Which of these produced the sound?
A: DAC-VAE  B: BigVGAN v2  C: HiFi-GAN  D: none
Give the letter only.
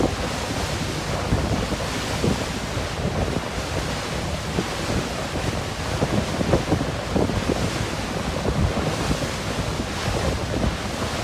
D